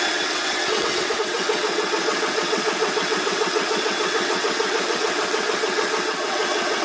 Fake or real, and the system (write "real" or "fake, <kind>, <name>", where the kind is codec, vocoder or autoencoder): fake, vocoder, WaveNeXt